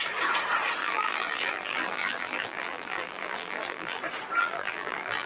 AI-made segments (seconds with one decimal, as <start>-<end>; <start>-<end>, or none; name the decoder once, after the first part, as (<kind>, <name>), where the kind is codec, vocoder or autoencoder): 0.8-4.0 (vocoder, BigVGAN v2); 4.4-5.3

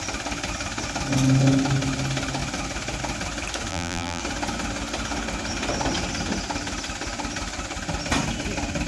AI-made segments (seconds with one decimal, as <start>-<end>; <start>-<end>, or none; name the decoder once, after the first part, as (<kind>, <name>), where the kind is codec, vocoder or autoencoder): 3.7-4.2 (vocoder, BigVGAN v2)

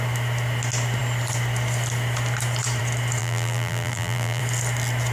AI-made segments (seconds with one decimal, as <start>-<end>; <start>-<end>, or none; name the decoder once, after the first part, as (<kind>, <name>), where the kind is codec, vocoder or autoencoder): 3.2-4.4 (vocoder, BigVGAN v2)

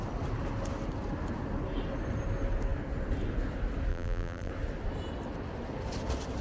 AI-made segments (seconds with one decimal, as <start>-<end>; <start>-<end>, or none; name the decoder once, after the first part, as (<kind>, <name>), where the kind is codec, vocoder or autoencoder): 3.9-4.5 (vocoder, BigVGAN v2)

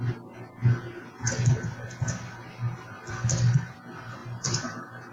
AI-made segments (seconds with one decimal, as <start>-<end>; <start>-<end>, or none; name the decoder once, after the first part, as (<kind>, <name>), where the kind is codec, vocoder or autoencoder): 4.2-5.1 (vocoder, BigVGAN v2)

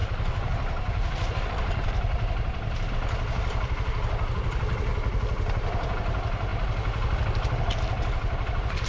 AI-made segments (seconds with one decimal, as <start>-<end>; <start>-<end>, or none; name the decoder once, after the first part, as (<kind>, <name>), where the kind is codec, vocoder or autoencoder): 0.0-2.9 (vocoder, BigVGAN v2)

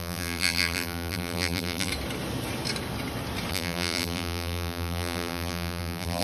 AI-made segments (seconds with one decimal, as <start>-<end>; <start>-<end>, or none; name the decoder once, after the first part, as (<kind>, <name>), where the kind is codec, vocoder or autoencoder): 0.0-1.9 (vocoder, BigVGAN v2); 3.5-6.2